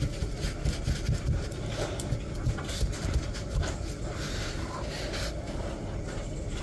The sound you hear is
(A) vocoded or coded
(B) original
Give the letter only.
B